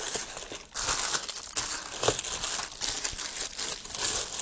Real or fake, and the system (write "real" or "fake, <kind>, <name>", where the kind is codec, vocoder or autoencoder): real